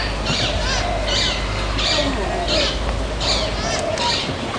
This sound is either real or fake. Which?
real